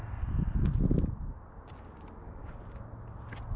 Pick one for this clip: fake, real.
real